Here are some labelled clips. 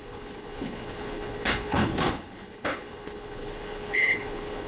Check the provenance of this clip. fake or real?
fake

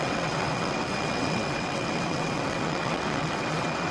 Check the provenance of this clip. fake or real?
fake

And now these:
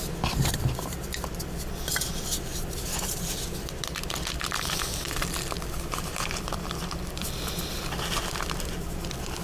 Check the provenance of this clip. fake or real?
fake